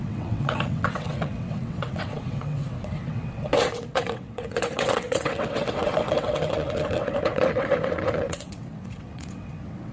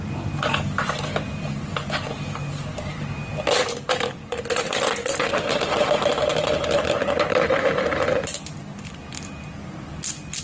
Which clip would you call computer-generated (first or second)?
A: first